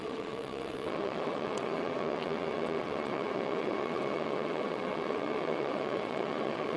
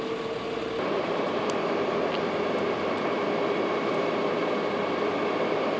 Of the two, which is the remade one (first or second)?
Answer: first